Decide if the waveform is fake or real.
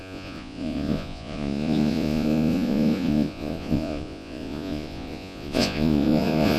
fake